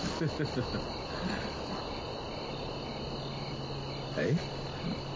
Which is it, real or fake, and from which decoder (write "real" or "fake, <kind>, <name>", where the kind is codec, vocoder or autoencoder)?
real